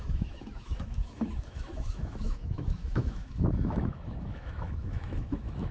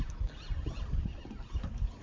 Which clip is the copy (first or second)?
first